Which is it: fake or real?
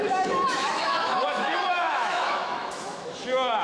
fake